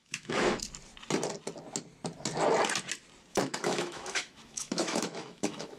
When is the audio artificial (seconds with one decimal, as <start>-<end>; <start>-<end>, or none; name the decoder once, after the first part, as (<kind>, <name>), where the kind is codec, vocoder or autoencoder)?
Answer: 0.0-0.6 (autoencoder, DAC-VAE); 3.3-5.8